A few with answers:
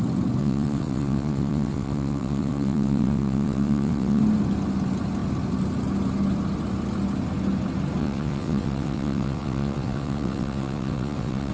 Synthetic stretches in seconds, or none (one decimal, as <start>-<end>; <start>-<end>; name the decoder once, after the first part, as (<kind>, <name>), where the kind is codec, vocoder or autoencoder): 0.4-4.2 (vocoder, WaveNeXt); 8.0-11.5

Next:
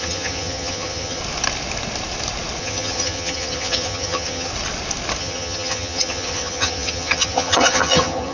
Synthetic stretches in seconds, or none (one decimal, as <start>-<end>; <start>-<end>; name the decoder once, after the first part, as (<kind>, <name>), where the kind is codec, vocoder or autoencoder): 0.0-1.2 (vocoder, HiFi-GAN); 2.6-4.5; 5.2-8.3

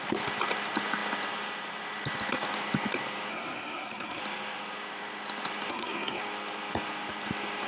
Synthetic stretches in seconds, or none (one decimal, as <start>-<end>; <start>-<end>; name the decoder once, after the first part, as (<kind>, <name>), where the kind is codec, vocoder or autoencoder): 3.3-4.2 (codec, SNAC); 5.7-6.2

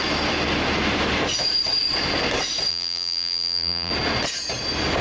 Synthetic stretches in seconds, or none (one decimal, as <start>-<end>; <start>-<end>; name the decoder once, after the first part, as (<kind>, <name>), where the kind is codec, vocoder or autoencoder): 2.7-3.9 (vocoder, BigVGAN v2)

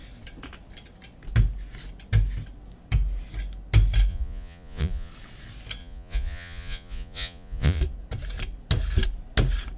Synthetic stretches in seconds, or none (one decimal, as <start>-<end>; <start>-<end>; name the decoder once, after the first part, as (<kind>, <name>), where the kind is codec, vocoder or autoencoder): 4.1-5.1 (vocoder, Vocos); 5.8-7.8

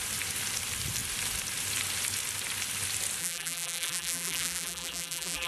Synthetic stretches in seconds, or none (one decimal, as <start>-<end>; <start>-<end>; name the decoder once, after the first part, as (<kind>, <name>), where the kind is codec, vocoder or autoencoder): 3.2-5.5 (vocoder, BigVGAN v2)

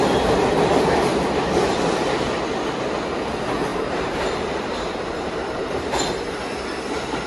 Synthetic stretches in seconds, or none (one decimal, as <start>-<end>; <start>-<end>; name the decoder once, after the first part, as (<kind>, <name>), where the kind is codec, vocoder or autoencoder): 3.7-6.3 (vocoder, BigVGAN v2)

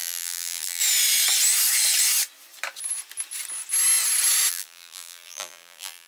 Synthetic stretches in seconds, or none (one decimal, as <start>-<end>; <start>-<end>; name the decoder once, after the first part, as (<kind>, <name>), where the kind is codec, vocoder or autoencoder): 0.0-0.8 (vocoder, BigVGAN v2); 4.5-6.1